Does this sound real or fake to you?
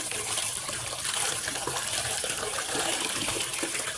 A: fake